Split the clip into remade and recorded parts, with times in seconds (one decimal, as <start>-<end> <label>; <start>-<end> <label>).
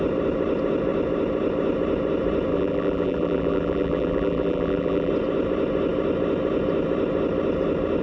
0.0-2.5 recorded; 2.5-5.1 remade; 5.1-8.0 recorded